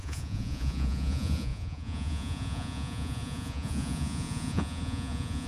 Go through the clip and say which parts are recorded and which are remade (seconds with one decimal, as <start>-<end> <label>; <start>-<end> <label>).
0.0-5.5 remade